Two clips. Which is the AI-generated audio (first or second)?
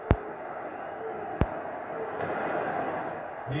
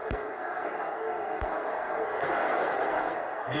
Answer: second